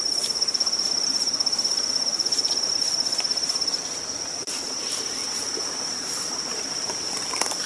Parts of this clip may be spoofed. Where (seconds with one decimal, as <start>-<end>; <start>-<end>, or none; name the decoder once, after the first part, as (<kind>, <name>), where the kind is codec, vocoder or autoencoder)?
none